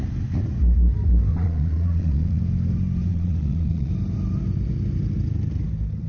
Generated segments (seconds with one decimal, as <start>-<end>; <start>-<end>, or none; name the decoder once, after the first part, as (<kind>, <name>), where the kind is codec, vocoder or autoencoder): 1.3-2.4 (vocoder, Vocos); 3.1-3.9